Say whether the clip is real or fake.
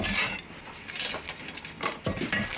real